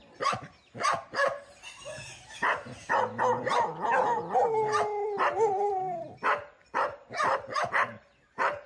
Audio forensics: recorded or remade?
recorded